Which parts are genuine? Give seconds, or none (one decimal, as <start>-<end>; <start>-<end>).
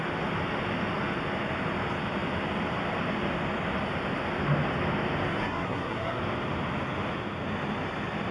0.0-5.3; 6.2-8.3